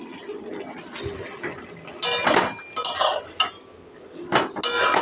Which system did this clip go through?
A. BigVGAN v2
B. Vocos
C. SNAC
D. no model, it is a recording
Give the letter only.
D